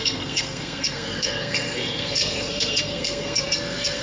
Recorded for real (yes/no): no